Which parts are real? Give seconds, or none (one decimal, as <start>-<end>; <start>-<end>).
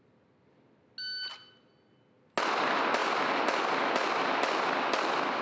0.0-5.4